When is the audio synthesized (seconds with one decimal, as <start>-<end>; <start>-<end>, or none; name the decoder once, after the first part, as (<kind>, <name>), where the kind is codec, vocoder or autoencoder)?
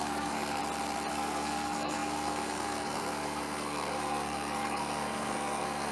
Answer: 0.0-0.6 (codec, SNAC); 1.1-5.9